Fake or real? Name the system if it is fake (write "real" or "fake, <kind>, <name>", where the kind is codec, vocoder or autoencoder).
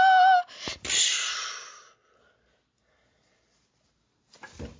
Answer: real